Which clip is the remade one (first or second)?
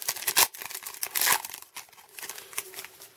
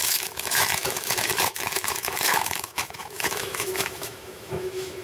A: second